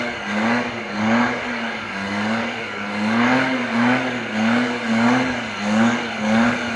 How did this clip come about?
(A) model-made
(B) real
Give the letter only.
A